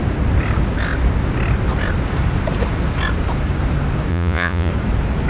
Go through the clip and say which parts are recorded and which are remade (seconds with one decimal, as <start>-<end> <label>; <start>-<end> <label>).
0.0-4.1 recorded; 4.1-4.7 remade; 4.7-5.3 recorded